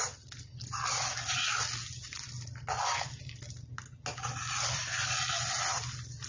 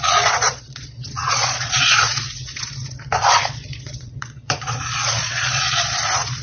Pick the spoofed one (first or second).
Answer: second